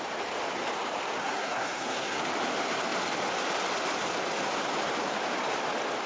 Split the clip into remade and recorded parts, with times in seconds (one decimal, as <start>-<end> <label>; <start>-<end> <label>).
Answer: 0.0-1.2 recorded; 1.2-2.2 remade; 2.2-6.1 recorded